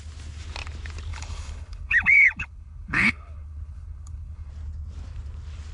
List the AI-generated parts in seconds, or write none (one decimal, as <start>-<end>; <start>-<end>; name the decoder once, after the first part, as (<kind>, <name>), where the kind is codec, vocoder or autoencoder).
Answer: 1.1-4.5 (codec, HILCodec)